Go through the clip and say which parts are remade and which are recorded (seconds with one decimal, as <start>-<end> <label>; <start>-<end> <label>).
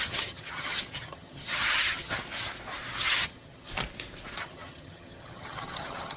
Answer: 0.0-2.2 remade; 2.2-3.0 recorded; 3.0-3.7 remade; 3.7-4.4 recorded; 4.4-6.2 remade